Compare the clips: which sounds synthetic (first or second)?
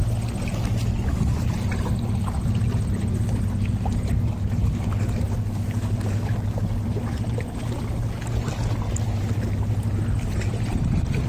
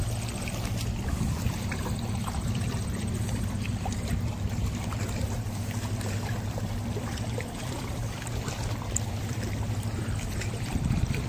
second